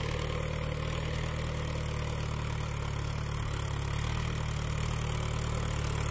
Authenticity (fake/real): real